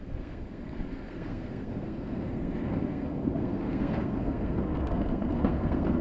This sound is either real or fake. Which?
fake